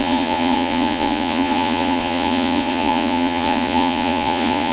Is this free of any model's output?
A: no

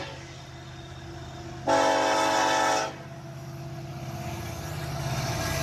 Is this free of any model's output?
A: yes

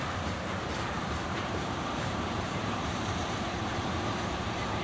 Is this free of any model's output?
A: no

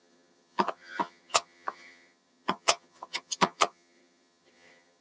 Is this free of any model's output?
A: no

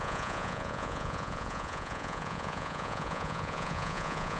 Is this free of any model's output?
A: no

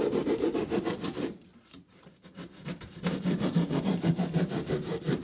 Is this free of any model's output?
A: no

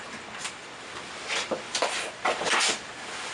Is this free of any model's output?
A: no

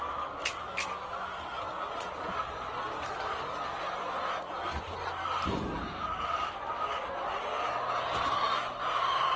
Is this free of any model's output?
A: yes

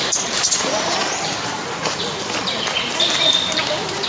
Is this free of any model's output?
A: no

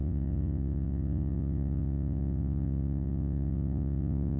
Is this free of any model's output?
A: no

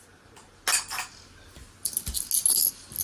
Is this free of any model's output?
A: yes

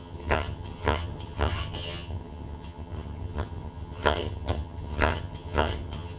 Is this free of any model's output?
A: no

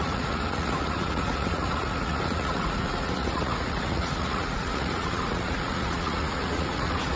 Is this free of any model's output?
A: no